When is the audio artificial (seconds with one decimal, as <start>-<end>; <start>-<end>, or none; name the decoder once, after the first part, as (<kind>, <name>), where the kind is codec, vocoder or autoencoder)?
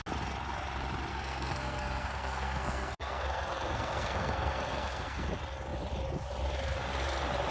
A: 1.1-5.3 (codec, SNAC)